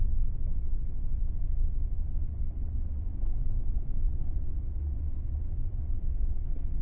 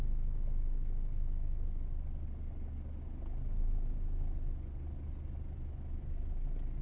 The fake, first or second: first